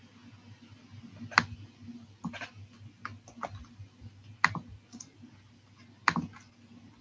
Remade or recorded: recorded